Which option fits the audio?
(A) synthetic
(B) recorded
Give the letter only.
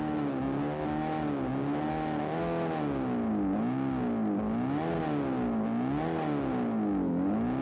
B